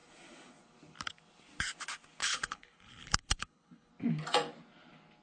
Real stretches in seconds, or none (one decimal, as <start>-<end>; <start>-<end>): 0.0-2.2; 3.9-5.2